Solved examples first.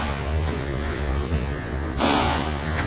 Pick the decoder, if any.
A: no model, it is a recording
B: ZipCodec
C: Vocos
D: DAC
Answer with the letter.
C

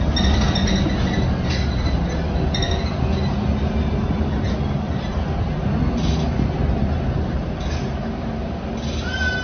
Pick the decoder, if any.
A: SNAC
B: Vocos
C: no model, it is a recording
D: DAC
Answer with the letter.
C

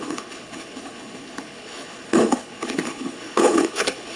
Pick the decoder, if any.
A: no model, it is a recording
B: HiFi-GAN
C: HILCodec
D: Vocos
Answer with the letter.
C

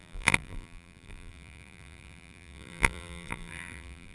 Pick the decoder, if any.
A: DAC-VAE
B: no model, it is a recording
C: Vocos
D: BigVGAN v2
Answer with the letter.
D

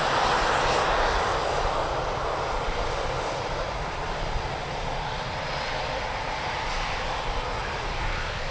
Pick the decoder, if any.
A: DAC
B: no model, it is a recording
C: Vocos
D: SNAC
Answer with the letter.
B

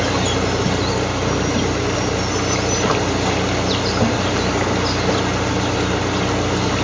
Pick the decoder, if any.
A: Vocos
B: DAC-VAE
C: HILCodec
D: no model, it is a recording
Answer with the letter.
D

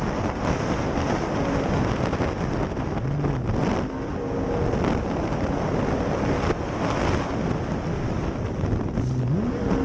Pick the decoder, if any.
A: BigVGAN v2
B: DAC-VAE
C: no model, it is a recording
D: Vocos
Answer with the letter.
C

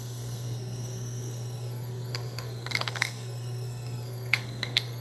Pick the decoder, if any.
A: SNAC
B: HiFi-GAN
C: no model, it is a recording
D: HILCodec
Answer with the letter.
A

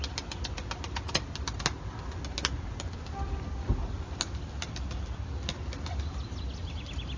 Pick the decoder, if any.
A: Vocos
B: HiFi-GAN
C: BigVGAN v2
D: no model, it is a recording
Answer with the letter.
D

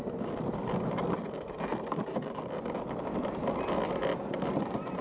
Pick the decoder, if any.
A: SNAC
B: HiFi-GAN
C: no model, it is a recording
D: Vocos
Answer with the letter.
C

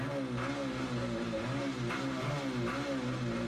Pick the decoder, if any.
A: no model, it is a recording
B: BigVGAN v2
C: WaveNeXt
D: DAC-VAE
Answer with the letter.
A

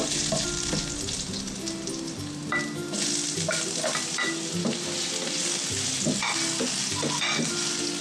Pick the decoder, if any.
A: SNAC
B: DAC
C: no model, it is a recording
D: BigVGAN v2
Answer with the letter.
C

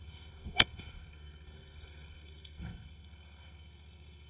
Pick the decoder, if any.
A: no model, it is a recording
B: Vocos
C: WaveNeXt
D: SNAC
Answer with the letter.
D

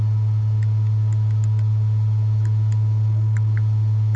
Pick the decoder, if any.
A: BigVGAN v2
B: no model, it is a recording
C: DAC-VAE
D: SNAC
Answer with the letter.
B